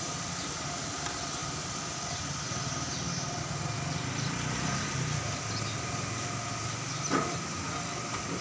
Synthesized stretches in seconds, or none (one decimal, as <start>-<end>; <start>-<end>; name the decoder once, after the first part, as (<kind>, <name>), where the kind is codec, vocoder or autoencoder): none